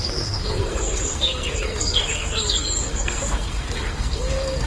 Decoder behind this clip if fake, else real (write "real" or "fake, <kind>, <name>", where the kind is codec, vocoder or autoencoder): fake, codec, SNAC